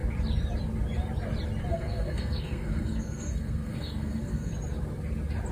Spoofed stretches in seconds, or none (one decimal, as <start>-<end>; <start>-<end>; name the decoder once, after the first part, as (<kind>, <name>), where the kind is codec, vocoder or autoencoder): 1.7-4.5 (codec, SNAC)